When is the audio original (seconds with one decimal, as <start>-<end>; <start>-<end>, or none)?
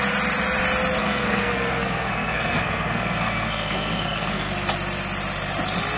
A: 0.0-1.0; 4.5-6.0